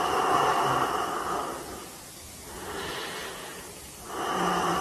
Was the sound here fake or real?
real